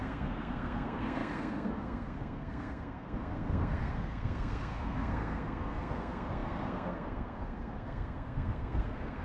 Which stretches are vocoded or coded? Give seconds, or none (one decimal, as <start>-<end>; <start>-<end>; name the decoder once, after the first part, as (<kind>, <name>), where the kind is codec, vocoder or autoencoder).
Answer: 0.0-9.2 (codec, SNAC)